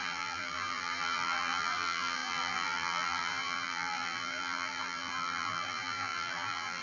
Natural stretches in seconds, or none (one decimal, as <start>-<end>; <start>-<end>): none